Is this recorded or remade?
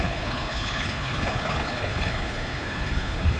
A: remade